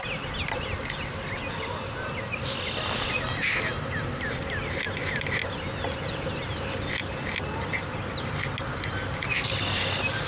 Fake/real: real